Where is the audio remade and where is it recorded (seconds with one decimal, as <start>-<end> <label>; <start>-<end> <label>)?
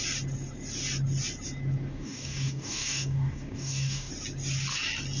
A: 0.0-1.9 recorded; 1.9-4.1 remade; 4.1-5.2 recorded